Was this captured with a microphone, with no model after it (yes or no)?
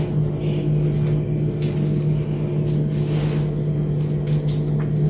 yes